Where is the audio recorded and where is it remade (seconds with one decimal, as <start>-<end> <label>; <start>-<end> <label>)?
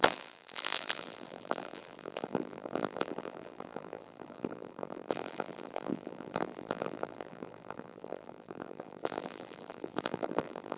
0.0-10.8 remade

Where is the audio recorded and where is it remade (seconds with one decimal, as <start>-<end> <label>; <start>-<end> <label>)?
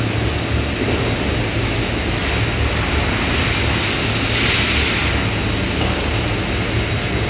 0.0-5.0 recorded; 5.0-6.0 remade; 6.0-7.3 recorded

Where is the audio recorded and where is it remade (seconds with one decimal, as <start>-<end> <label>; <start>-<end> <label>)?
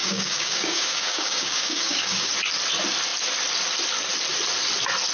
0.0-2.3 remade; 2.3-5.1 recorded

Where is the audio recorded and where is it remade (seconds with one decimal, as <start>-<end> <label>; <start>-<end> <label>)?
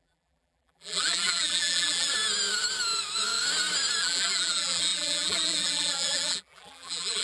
0.0-2.1 remade; 2.1-4.0 recorded; 4.0-7.2 remade